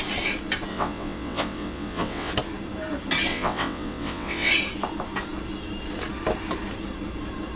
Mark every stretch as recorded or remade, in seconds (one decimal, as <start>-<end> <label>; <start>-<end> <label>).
0.0-0.7 recorded; 0.7-2.3 remade; 2.3-3.3 recorded; 3.3-4.5 remade; 4.5-7.6 recorded